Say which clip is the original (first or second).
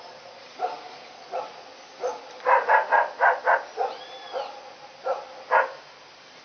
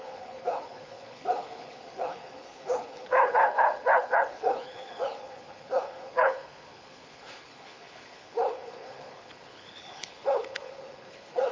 first